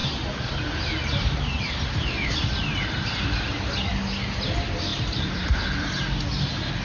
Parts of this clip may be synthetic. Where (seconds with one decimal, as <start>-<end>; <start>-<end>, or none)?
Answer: 0.0-3.6; 4.9-5.6